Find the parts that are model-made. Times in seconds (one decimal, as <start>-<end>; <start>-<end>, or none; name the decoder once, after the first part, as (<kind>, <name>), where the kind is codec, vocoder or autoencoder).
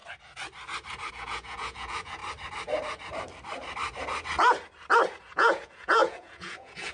1.1-2.2 (vocoder, Vocos); 5.2-6.9